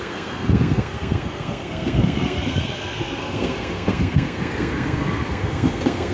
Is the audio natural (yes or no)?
no